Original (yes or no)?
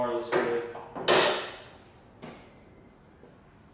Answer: yes